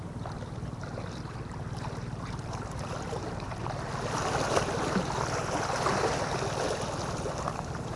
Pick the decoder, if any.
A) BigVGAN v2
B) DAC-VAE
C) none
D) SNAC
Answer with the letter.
C